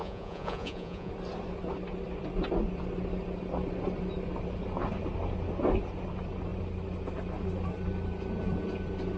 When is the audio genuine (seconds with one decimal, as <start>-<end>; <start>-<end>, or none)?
1.1-9.2